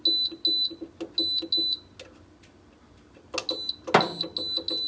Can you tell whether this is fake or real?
real